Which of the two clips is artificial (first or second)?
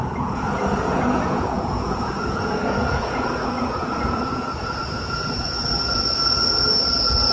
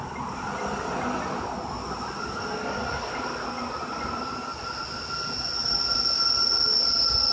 first